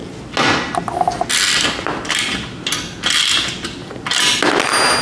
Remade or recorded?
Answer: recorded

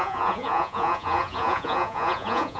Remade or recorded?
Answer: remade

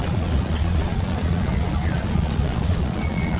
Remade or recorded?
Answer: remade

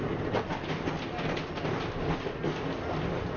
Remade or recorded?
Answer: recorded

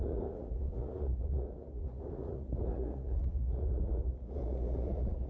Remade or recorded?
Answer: remade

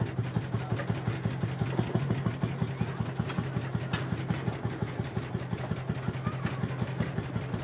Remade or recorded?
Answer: recorded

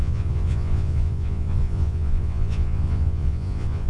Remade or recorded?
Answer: remade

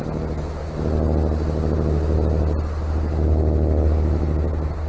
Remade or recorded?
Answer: recorded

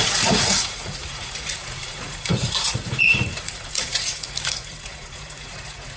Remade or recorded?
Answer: remade